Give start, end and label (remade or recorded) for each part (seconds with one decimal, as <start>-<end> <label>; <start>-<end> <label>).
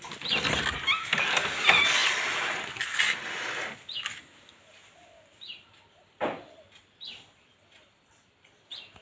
0.0-9.0 recorded